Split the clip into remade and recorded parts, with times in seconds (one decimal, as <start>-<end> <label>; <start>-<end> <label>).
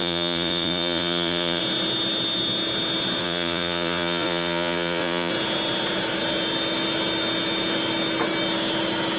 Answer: 0.0-1.6 remade; 1.6-3.2 recorded; 3.2-5.3 remade; 5.3-9.2 recorded